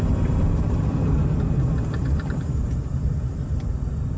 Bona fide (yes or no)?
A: yes